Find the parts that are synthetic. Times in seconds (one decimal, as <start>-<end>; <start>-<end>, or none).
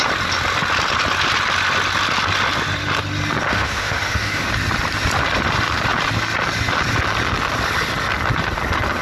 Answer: 3.5-4.5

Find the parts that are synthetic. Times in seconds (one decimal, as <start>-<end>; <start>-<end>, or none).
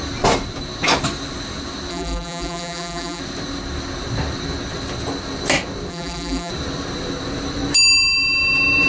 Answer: 1.9-3.2; 5.9-6.5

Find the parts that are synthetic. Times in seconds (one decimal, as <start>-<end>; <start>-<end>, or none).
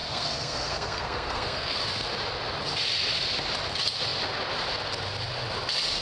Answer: 0.0-1.8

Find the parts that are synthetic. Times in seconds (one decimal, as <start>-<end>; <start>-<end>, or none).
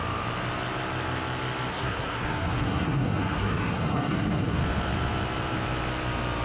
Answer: 1.7-4.6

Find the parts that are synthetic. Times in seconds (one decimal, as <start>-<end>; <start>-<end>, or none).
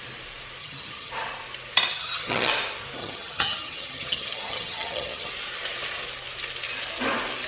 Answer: 0.6-1.1; 1.9-2.5; 3.0-5.3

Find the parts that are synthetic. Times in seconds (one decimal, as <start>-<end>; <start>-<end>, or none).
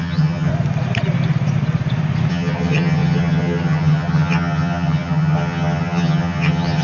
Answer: 0.0-0.5; 2.3-6.8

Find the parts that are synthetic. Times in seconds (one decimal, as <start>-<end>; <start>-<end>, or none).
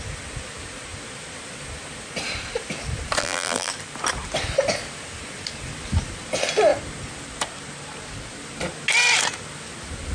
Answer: 3.2-3.7